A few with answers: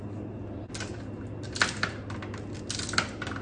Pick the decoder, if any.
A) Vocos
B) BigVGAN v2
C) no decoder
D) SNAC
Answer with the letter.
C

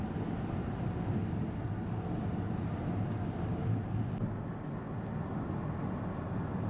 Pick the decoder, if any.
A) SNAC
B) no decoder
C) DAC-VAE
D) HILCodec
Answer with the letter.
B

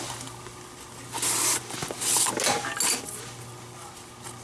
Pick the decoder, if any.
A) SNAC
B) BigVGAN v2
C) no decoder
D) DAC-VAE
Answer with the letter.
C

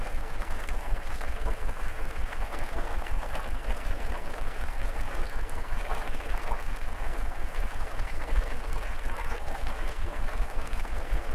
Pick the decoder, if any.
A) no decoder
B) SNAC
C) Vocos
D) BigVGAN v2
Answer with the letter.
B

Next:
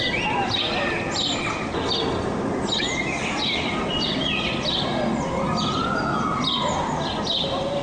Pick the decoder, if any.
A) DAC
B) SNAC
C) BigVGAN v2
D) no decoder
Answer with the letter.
D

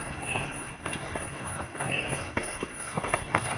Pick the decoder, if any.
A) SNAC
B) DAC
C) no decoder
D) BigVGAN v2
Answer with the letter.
A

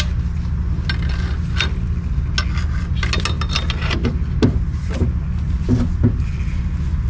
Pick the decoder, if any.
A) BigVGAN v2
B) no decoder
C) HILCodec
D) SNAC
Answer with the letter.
B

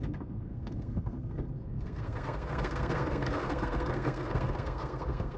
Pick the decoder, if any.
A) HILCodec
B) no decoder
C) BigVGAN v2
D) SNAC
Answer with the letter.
D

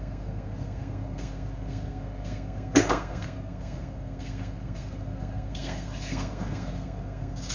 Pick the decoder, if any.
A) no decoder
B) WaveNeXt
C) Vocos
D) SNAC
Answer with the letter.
D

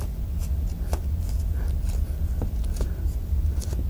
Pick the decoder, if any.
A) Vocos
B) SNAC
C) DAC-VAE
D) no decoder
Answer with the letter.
D